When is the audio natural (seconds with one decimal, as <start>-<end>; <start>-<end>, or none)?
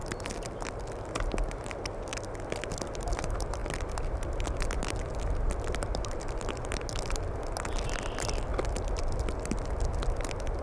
0.0-10.6